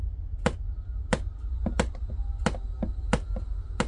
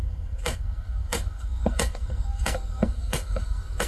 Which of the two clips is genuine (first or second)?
first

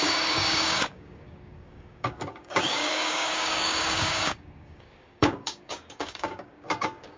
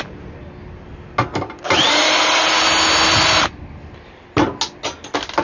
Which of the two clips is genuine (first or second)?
second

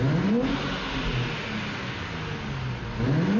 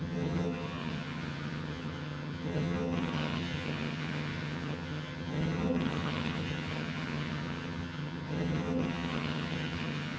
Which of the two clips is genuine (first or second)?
first